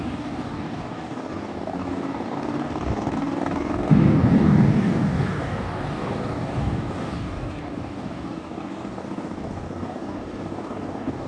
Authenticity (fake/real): fake